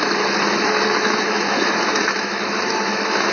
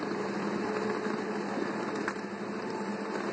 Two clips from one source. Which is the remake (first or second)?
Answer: first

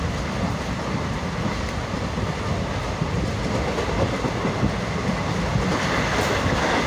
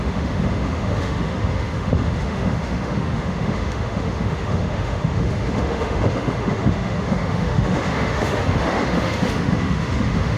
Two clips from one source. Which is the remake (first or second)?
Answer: second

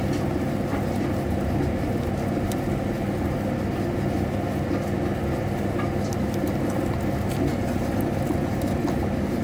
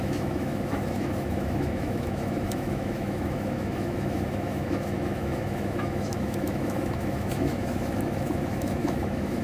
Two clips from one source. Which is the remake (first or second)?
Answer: second